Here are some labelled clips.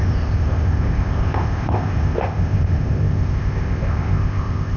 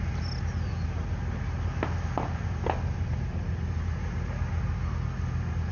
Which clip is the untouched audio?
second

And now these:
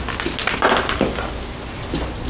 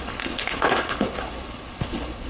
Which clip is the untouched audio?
first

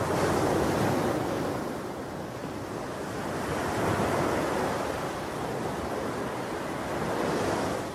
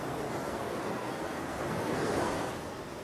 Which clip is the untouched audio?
first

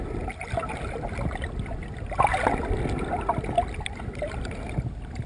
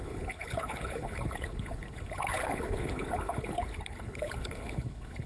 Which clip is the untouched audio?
first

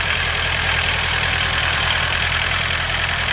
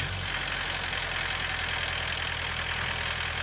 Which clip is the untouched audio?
second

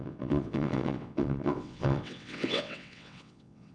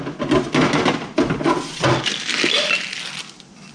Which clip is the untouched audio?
second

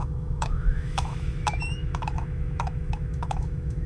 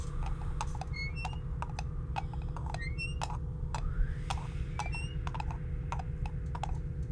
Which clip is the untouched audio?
second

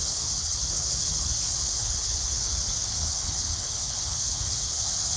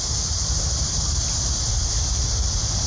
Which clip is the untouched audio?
second